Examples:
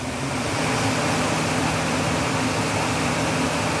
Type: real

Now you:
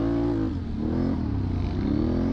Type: real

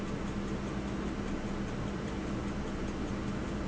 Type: real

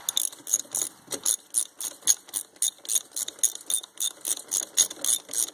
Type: real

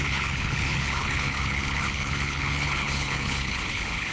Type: fake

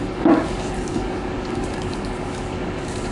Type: fake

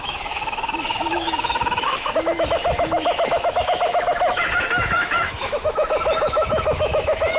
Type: fake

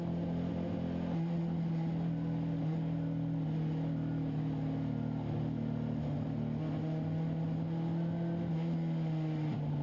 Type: real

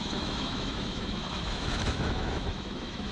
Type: fake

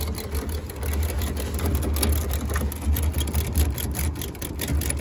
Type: real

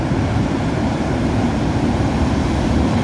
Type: real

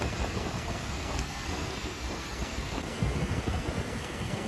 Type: fake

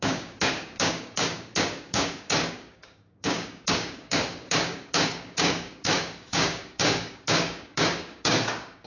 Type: fake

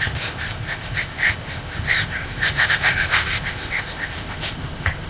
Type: fake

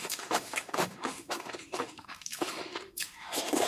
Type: fake